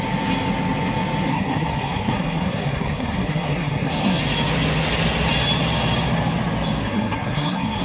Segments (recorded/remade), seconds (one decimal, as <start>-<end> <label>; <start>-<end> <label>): 0.0-1.3 recorded; 1.3-4.2 remade; 4.2-6.8 recorded; 6.8-7.8 remade